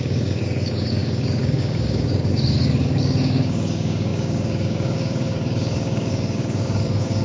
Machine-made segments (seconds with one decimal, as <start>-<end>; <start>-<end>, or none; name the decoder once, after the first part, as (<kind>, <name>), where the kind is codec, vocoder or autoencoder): 0.0-7.2 (codec, DAC)